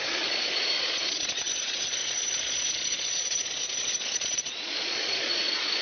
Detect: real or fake fake